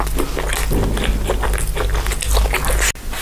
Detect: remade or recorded recorded